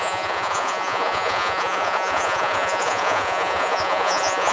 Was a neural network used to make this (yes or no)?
yes